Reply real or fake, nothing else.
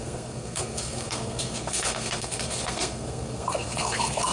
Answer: fake